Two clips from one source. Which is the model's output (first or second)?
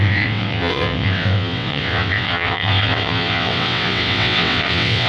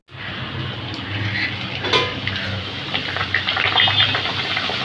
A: first